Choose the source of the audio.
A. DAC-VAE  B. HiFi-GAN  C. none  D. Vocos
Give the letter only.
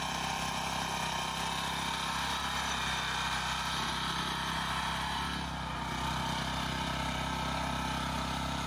C